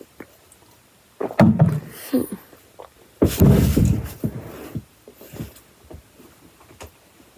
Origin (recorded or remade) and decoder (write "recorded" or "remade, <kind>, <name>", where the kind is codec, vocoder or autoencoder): recorded